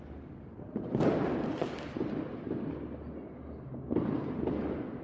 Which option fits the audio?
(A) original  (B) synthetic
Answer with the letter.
A